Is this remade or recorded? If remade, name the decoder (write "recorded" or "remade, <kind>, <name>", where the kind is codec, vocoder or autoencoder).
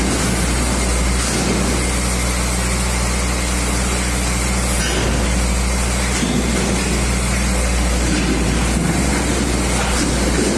recorded